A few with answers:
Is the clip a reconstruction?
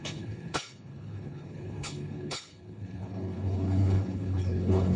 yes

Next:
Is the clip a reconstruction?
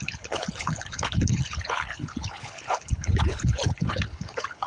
yes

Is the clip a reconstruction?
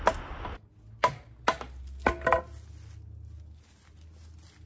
no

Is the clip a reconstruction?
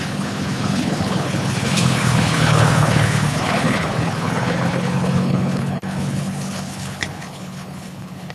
yes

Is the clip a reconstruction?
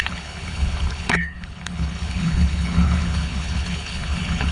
yes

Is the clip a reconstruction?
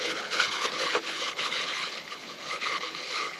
yes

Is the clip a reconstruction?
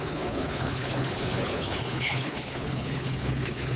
yes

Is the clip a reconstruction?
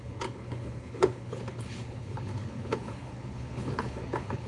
yes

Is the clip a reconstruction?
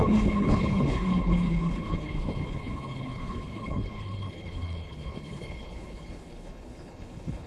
yes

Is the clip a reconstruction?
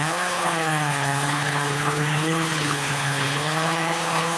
yes